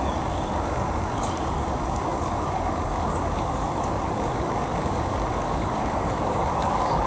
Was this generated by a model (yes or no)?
yes